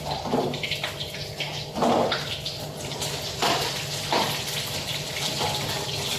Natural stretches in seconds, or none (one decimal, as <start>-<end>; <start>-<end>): 0.0-1.5; 4.2-6.2